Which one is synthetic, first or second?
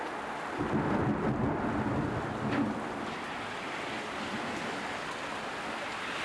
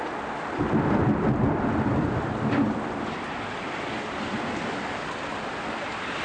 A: second